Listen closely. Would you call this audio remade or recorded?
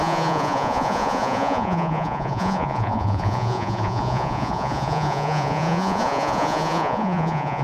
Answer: remade